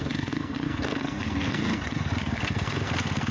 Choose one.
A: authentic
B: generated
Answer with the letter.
B